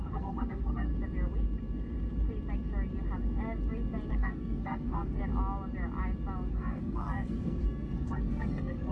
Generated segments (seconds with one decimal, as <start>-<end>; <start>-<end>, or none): 0.0-0.9; 4.1-5.2; 6.5-8.9